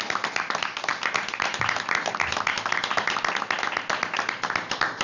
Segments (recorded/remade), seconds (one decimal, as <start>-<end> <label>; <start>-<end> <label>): 0.0-5.0 recorded